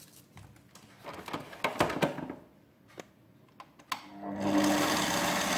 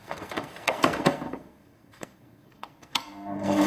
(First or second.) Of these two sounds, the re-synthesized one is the second